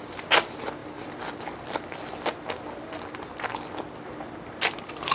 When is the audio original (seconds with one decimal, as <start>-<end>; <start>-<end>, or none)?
0.0-5.1